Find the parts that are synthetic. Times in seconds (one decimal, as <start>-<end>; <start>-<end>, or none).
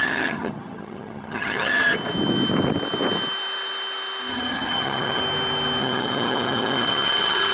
0.0-1.8; 4.3-5.2; 5.8-7.5